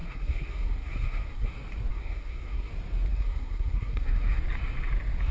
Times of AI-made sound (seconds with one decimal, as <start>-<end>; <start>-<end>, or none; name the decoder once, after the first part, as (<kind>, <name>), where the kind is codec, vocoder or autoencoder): 0.0-1.5 (codec, SNAC); 1.9-2.7; 3.1-4.4